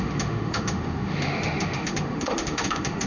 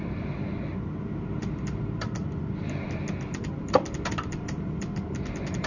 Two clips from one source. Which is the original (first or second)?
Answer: second